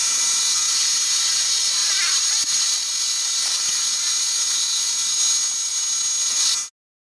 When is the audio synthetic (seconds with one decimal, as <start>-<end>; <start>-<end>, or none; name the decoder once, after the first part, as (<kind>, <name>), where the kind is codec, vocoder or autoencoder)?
none